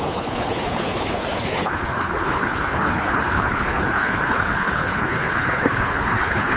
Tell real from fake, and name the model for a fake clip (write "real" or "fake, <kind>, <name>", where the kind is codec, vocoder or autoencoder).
fake, codec, HILCodec